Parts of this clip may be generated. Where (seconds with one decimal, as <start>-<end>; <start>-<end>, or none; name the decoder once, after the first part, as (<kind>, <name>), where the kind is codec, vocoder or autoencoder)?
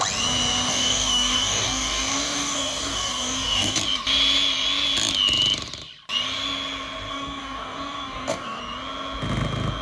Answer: 0.7-3.8 (codec, DAC); 7.1-8.6